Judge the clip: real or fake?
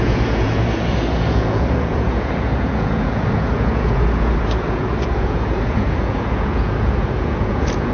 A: fake